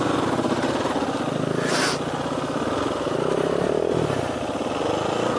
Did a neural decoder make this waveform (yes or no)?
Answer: no